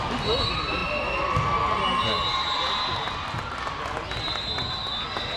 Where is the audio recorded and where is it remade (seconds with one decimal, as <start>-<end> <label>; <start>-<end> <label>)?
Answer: 0.0-5.4 recorded

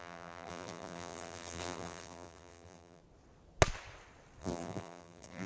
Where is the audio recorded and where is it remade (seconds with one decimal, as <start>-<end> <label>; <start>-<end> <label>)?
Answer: 0.0-3.0 remade; 3.0-4.4 recorded; 4.4-5.5 remade

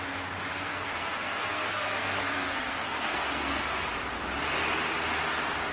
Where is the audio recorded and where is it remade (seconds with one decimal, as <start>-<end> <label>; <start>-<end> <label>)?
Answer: 0.0-0.5 recorded; 0.5-3.9 remade; 3.9-5.7 recorded

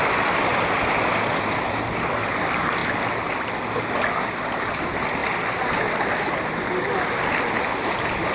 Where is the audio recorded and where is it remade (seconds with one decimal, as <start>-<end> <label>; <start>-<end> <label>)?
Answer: 0.0-8.3 recorded

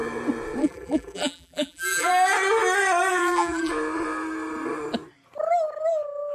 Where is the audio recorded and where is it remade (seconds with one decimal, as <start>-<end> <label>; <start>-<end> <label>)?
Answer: 0.0-0.6 recorded; 0.6-2.1 remade; 2.1-3.1 recorded; 3.1-3.7 remade; 3.7-6.3 recorded

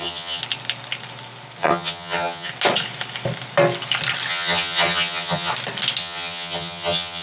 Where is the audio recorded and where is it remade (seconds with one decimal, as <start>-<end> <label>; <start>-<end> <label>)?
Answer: 0.0-0.4 remade; 0.4-1.6 recorded; 1.6-2.5 remade; 2.5-4.3 recorded; 4.3-5.5 remade; 5.5-6.0 recorded; 6.0-7.2 remade

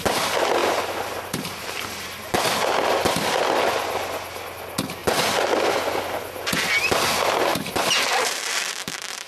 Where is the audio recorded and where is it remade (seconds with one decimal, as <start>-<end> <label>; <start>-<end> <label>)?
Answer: 0.0-0.6 recorded; 0.6-1.9 remade; 1.9-7.5 recorded; 7.5-9.3 remade

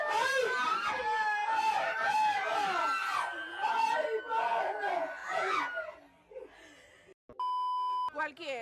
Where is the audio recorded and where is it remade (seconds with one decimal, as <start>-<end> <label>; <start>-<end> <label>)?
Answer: 0.0-8.6 recorded